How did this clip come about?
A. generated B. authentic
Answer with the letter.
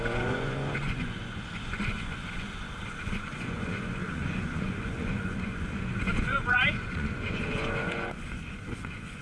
A